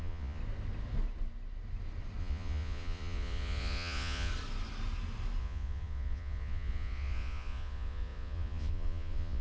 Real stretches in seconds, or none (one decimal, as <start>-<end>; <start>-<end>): 0.4-2.2; 4.3-5.4